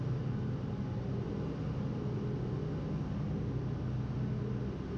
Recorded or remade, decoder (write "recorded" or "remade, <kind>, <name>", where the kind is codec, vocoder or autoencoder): recorded